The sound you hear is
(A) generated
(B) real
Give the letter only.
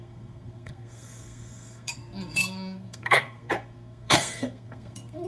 A